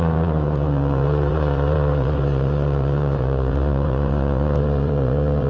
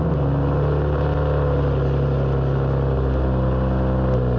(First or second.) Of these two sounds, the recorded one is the second